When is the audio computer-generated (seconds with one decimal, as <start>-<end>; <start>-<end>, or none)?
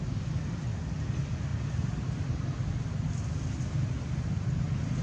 none